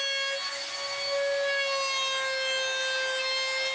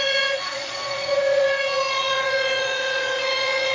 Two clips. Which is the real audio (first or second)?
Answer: first